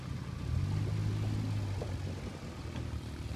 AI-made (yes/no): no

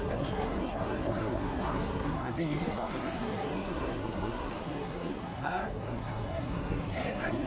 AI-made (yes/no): yes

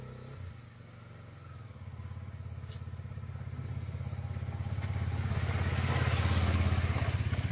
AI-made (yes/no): no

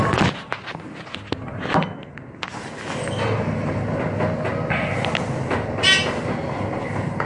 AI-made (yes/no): no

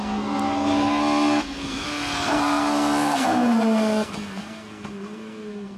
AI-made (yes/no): yes